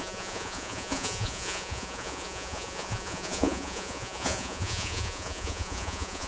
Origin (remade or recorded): remade